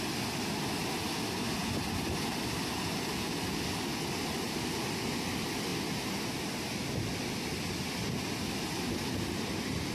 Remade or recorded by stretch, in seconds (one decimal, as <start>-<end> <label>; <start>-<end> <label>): 0.0-9.9 recorded